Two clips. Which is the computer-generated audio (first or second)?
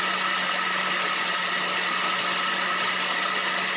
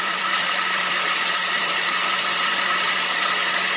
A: second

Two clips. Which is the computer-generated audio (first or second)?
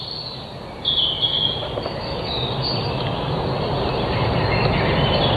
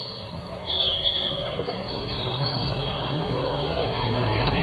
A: second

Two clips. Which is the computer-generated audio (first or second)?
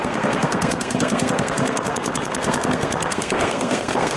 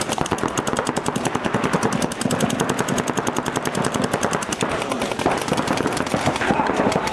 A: first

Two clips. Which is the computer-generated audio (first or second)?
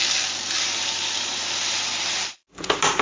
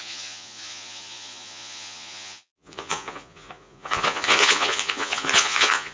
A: second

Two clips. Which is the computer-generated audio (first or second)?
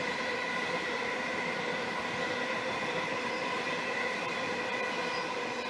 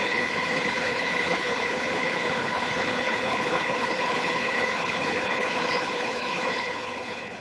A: second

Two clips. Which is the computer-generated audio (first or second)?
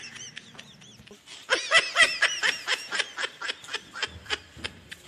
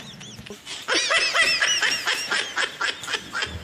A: first